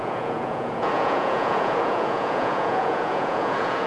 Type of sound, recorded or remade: remade